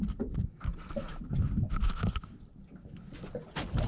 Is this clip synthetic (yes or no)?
no